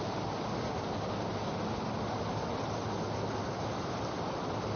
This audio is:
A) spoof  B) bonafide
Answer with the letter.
B